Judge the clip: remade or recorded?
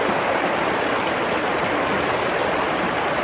recorded